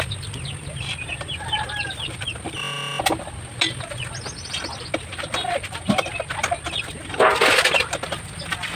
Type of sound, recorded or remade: recorded